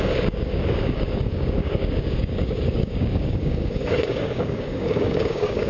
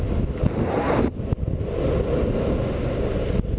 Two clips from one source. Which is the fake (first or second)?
first